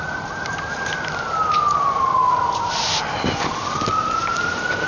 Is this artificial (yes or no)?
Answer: no